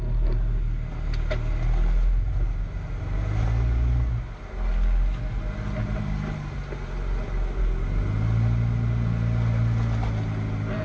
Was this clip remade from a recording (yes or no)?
no